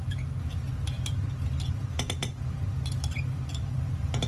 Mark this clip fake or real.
real